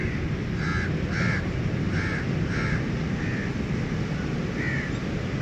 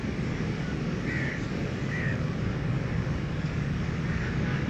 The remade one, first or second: second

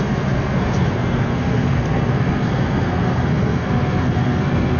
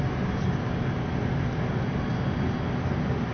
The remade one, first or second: first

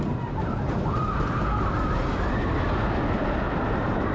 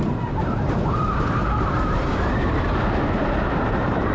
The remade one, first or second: second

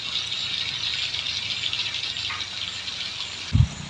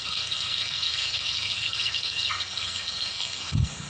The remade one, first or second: second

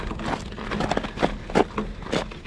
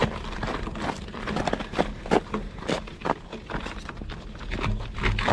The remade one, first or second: second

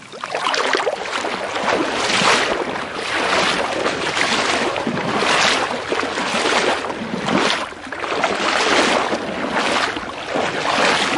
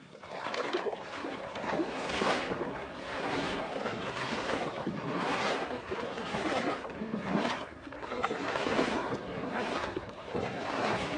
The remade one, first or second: second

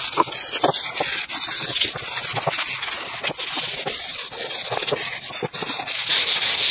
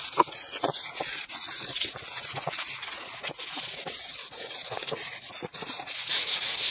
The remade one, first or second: second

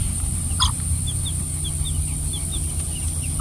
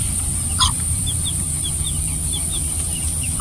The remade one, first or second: second